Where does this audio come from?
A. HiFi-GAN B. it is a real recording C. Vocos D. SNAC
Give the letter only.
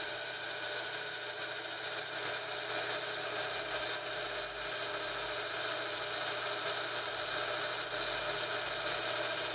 B